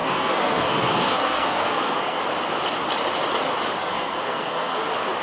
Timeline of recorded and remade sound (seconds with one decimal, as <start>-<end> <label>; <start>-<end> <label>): 0.0-2.2 remade; 2.2-3.8 recorded; 3.8-4.8 remade; 4.8-5.2 recorded